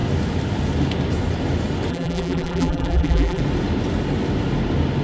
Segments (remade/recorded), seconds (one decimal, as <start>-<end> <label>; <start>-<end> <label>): 0.0-1.9 recorded; 1.9-3.4 remade; 3.4-5.0 recorded